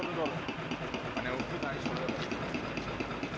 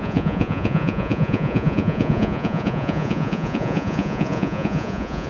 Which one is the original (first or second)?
first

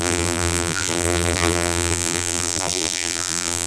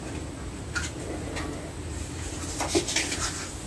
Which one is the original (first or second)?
second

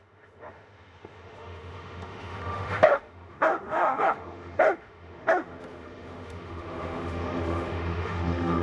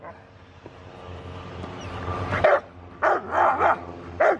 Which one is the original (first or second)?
second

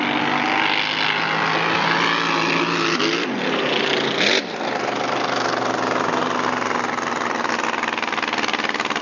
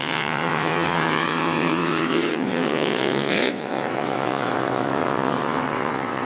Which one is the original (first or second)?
first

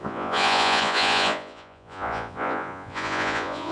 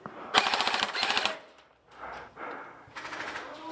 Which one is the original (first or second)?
second